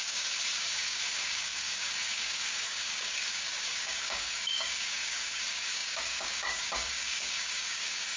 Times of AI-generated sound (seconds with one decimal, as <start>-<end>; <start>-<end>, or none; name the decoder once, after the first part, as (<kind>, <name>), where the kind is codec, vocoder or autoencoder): 0.0-8.2 (codec, DAC)